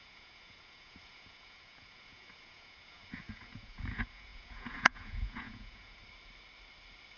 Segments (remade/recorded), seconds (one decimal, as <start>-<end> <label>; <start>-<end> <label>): 0.0-6.0 remade; 6.0-7.2 recorded